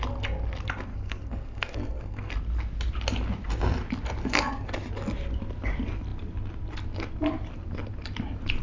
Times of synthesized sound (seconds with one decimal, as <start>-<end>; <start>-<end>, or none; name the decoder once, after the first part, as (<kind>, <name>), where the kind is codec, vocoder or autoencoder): 0.9-2.3 (codec, SNAC); 4.2-4.7